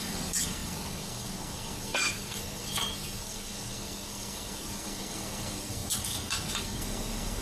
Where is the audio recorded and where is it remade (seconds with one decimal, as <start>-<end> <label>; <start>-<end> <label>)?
0.0-7.4 remade